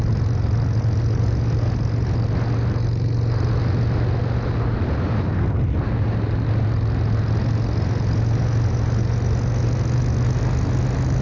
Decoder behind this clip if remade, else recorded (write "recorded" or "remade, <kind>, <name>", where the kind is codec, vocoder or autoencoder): recorded